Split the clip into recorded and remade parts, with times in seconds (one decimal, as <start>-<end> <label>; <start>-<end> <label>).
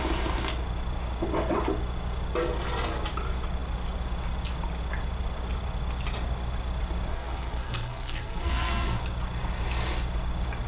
0.0-7.1 recorded; 7.1-9.0 remade; 9.0-10.7 recorded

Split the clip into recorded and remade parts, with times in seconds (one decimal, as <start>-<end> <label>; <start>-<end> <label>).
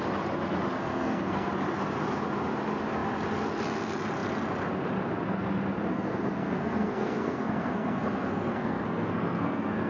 0.0-0.8 recorded; 0.8-1.5 remade; 1.5-5.9 recorded; 5.9-9.9 remade